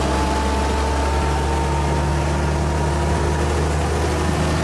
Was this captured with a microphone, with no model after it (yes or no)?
yes